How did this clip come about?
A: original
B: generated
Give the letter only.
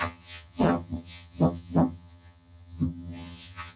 B